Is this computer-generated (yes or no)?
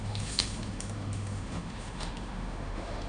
yes